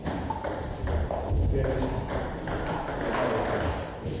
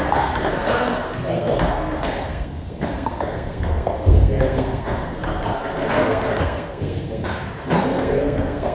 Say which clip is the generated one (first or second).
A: second